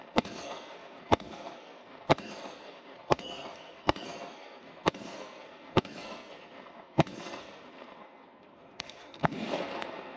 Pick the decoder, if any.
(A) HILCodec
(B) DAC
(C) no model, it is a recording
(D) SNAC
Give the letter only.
D